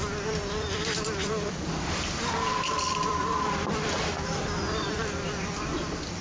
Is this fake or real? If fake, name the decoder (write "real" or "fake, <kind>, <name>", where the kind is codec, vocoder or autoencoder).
fake, vocoder, BigVGAN v2